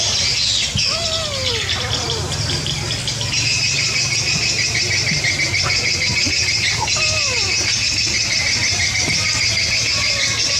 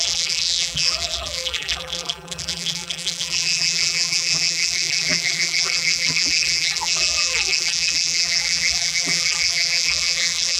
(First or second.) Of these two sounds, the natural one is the first